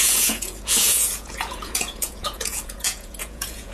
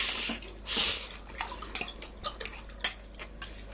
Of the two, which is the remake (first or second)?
first